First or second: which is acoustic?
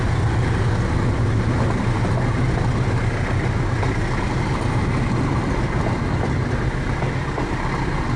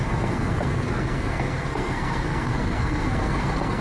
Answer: first